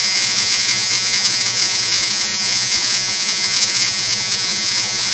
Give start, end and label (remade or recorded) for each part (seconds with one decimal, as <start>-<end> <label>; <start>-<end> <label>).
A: 0.0-5.1 remade